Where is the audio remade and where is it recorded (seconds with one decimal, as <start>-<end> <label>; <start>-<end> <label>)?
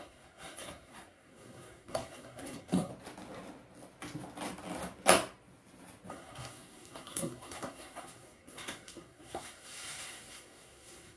0.0-2.9 remade; 2.9-6.1 recorded; 6.1-11.2 remade